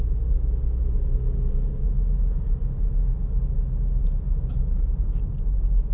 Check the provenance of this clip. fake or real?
real